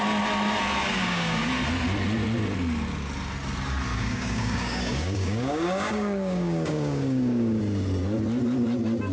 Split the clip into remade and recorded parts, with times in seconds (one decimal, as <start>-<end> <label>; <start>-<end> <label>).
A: 0.0-0.8 recorded; 0.8-1.5 remade; 1.5-3.9 recorded; 3.9-7.6 remade; 7.6-9.1 recorded